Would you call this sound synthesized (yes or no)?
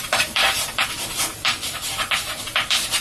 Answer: yes